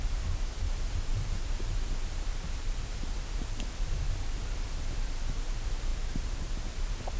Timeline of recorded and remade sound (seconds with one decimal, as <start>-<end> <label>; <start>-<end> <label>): 0.0-7.2 recorded